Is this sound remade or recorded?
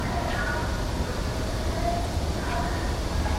recorded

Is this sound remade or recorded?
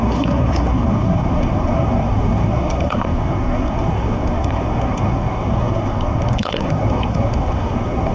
remade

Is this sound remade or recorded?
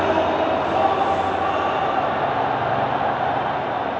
recorded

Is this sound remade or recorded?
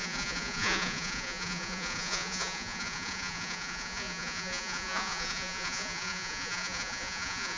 remade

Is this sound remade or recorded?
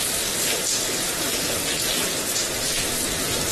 recorded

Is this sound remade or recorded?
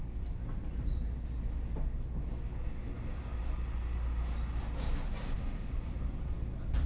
recorded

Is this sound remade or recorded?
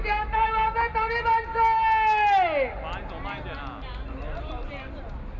recorded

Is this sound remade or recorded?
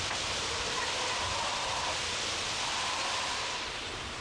recorded